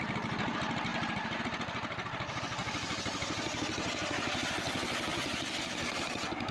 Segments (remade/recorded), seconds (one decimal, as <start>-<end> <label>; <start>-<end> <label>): 0.0-6.5 recorded